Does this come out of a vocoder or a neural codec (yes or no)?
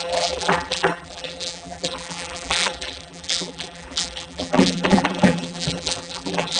yes